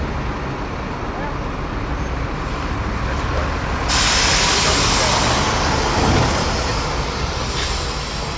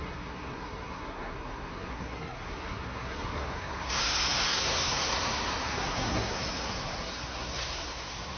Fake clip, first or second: second